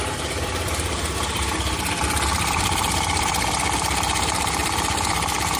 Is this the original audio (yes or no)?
no